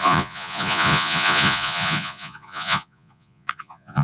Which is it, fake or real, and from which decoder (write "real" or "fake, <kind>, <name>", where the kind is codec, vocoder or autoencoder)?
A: fake, vocoder, Vocos